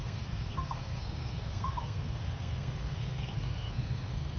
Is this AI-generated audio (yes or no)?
yes